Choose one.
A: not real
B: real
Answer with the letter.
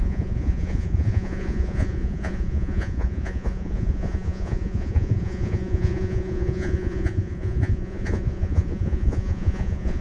A